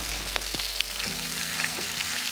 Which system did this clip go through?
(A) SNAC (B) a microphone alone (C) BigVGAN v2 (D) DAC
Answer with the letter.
A